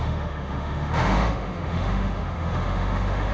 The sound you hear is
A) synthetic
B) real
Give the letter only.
A